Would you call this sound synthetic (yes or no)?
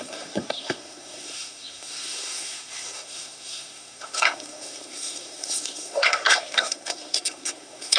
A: yes